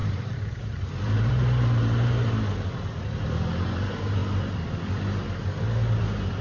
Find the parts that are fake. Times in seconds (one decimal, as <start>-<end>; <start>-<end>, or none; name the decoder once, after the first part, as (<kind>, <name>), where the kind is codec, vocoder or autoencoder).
0.0-1.3 (vocoder, BigVGAN v2)